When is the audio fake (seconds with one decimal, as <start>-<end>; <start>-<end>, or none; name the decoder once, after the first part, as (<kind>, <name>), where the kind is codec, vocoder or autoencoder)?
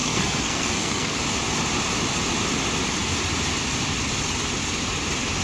0.0-1.2 (codec, SNAC)